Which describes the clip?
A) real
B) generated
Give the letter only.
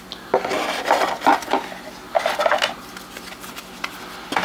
A